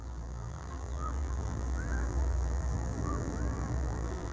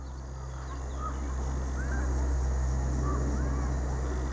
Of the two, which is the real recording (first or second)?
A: second